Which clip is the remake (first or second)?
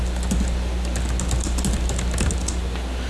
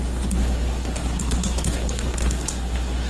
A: second